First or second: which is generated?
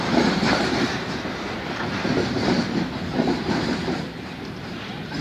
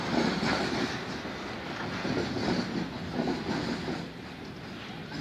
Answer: first